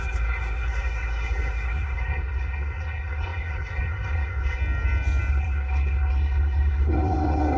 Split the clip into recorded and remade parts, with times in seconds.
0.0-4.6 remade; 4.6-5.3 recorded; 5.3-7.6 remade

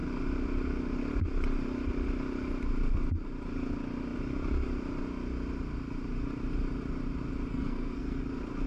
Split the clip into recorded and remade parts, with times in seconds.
0.0-7.5 recorded; 7.5-8.2 remade; 8.2-8.7 recorded

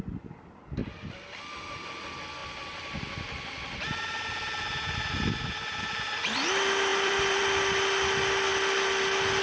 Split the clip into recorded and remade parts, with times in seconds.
0.0-0.8 recorded; 0.8-1.5 remade; 1.5-6.9 recorded; 6.9-7.4 remade; 7.4-9.4 recorded